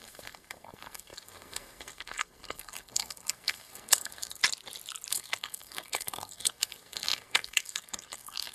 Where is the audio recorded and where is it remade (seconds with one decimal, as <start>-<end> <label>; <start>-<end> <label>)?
0.0-4.4 remade; 4.4-5.1 recorded; 5.1-8.5 remade